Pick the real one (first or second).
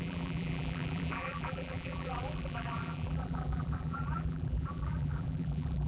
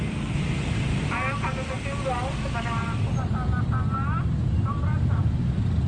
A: second